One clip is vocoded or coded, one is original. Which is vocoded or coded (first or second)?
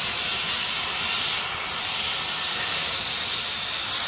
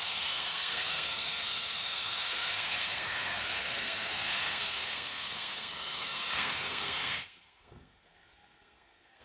second